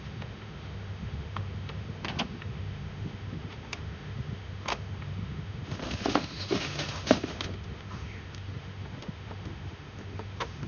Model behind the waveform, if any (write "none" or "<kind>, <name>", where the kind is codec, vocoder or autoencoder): autoencoder, DAC-VAE